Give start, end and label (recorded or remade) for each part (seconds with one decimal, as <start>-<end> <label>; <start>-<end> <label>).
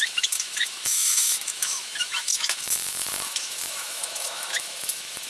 0.0-5.3 remade